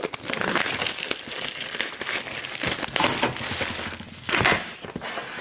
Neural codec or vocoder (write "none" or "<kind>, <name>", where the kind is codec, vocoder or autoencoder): none